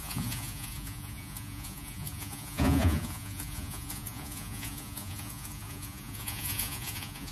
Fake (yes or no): yes